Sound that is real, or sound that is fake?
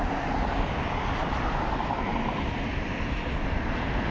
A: real